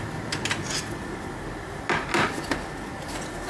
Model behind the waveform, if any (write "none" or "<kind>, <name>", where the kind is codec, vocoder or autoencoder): none